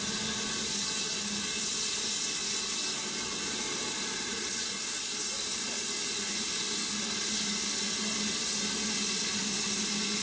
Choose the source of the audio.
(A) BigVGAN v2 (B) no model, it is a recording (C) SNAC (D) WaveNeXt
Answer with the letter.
B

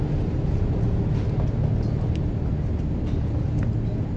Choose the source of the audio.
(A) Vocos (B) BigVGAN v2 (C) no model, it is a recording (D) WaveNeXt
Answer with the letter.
C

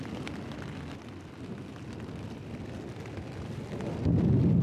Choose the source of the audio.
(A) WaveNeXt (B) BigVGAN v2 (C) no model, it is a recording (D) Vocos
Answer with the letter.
C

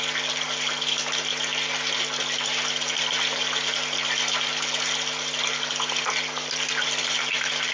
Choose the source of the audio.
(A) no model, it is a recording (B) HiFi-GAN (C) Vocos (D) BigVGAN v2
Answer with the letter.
A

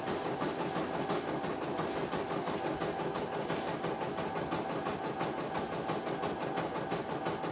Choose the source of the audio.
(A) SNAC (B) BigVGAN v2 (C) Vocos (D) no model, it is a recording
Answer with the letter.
D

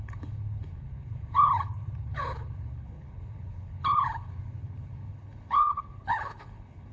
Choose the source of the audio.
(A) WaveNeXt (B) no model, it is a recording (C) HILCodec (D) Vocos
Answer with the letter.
C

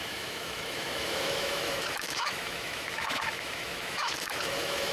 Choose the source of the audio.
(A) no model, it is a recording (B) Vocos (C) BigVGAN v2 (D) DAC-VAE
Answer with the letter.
D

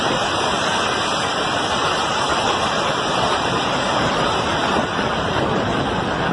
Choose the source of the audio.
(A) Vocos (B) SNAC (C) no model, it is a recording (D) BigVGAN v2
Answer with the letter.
D